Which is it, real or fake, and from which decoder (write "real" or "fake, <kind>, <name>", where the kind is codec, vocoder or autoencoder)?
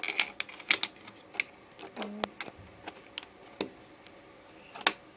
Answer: real